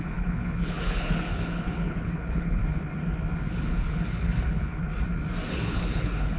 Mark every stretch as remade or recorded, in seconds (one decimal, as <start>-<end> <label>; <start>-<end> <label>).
0.0-2.6 remade; 2.6-3.5 recorded; 3.5-4.8 remade; 4.8-5.5 recorded; 5.5-6.4 remade

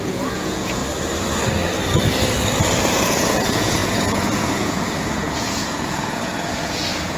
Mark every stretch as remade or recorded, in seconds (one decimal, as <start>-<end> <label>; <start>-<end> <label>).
0.0-0.8 remade; 0.8-2.9 recorded; 2.9-7.2 remade

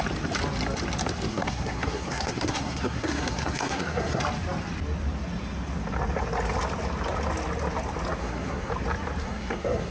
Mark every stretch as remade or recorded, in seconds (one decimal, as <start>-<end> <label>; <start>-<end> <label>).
0.0-1.3 recorded; 1.3-4.2 remade; 4.2-8.2 recorded; 8.2-8.7 remade; 8.7-9.2 recorded; 9.2-9.9 remade